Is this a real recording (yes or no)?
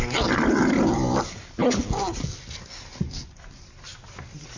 yes